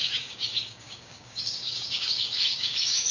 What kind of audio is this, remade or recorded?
remade